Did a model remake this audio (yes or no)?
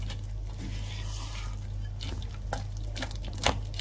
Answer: no